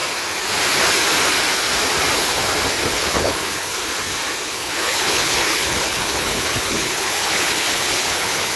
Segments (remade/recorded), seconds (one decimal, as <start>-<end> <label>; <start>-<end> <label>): 0.0-2.9 recorded; 2.9-3.8 remade; 3.8-4.5 recorded; 4.5-8.6 remade